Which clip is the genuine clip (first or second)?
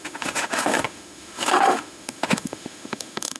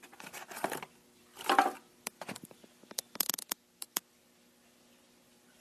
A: second